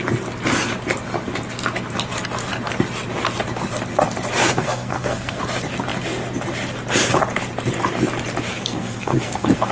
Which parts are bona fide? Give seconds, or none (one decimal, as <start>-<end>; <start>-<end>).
0.0-4.4; 5.4-8.5